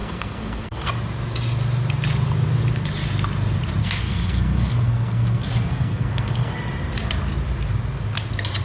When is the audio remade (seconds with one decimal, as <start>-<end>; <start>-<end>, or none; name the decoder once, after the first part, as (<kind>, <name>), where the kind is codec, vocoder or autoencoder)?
0.0-0.9 (codec, SNAC); 3.8-6.5